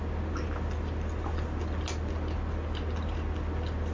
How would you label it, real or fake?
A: real